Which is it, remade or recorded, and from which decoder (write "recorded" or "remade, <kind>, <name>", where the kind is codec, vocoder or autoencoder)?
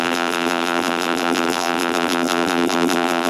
remade, vocoder, BigVGAN v2